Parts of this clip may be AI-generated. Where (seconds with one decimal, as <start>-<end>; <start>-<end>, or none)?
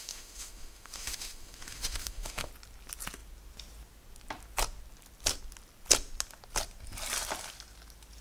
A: 0.0-2.5